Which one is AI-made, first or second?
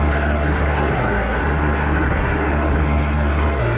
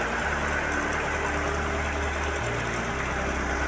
first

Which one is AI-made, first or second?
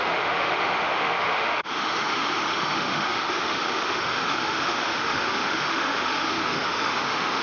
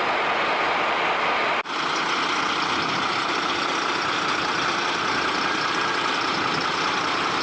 first